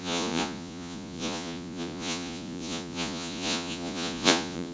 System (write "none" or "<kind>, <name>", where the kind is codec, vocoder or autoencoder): vocoder, Vocos